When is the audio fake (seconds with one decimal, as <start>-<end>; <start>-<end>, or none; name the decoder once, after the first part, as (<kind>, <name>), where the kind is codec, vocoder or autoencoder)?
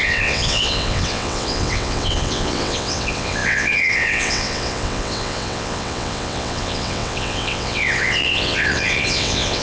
0.0-9.6 (vocoder, WaveNeXt)